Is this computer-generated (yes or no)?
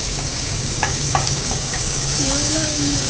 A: yes